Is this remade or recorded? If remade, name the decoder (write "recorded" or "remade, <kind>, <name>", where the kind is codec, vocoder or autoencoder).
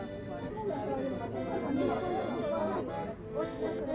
recorded